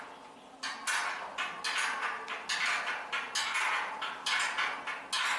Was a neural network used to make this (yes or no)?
no